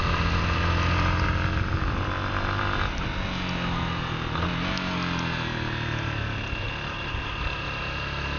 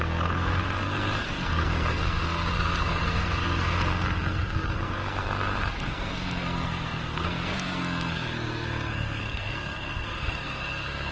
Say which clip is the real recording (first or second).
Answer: first